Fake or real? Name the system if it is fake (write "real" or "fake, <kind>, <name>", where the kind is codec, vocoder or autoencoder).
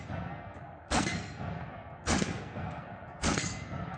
fake, codec, SNAC